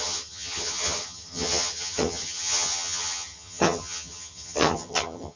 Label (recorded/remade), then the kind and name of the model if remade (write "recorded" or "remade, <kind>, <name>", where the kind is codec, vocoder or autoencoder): remade, vocoder, HiFi-GAN